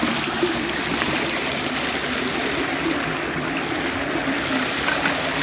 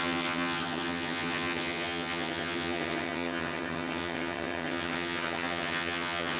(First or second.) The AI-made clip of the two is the second